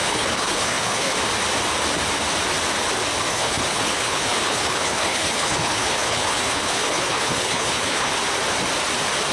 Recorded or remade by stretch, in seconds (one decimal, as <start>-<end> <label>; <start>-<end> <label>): 0.0-1.1 remade; 1.1-3.3 recorded; 3.3-8.1 remade; 8.1-9.3 recorded